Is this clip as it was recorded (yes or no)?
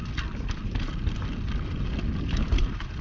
yes